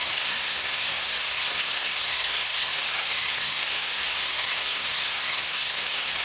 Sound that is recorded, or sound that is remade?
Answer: remade